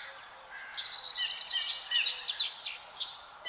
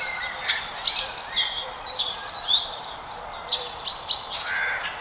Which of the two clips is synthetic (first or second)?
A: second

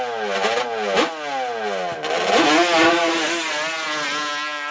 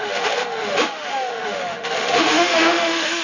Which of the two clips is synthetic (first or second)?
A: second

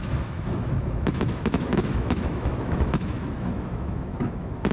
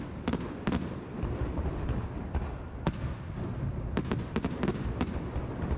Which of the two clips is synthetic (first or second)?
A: first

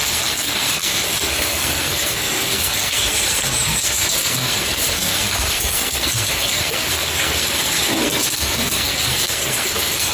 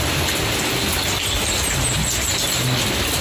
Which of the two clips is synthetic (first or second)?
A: first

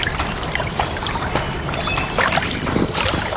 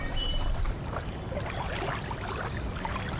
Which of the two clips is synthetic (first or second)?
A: first